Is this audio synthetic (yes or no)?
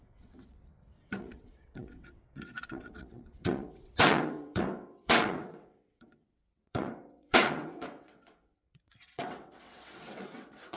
yes